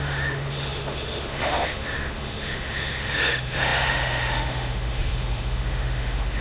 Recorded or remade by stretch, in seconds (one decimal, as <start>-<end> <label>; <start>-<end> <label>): 0.0-6.4 remade